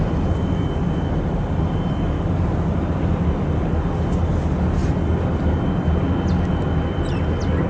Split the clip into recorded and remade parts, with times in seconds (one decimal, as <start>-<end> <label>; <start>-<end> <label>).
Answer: 0.0-7.7 recorded